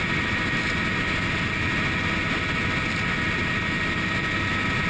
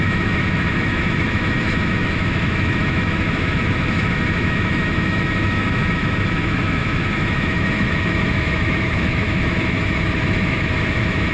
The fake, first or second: second